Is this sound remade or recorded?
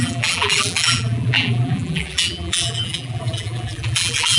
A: remade